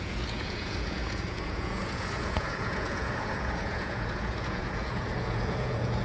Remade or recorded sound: remade